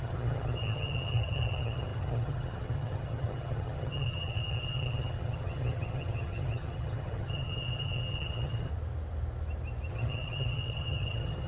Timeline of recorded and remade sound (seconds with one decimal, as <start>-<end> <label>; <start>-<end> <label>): 0.0-8.7 remade; 8.7-9.9 recorded; 9.9-11.5 remade